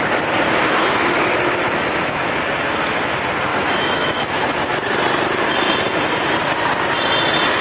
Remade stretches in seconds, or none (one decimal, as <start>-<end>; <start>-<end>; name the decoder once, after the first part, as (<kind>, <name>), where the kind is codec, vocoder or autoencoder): 0.7-2.3 (autoencoder, DAC-VAE); 3.5-4.7